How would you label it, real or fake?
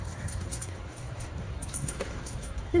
fake